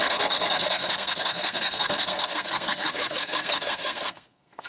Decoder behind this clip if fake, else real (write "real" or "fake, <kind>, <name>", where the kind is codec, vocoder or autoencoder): fake, codec, SNAC